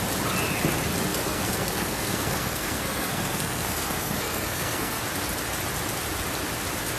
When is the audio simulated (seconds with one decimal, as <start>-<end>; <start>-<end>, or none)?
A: 1.1-5.0